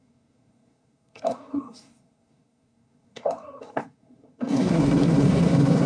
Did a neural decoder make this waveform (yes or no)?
yes